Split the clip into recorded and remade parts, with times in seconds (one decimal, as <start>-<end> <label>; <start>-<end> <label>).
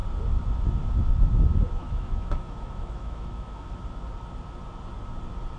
0.0-1.8 recorded; 1.8-3.8 remade; 3.8-5.6 recorded